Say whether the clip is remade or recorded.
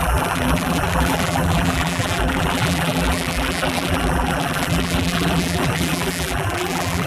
remade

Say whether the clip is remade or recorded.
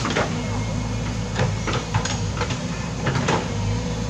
remade